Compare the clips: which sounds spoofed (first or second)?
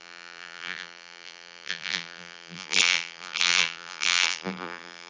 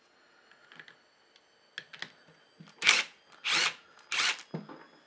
first